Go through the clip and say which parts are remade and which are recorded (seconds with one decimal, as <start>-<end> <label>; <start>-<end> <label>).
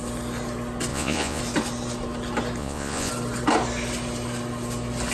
0.0-0.9 recorded; 0.9-1.4 remade; 1.4-2.6 recorded; 2.6-3.1 remade; 3.1-5.1 recorded